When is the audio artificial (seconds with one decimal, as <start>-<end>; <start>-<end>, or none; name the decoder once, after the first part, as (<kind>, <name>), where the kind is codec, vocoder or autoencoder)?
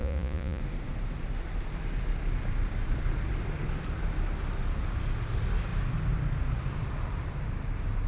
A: 0.0-0.6 (vocoder, Vocos)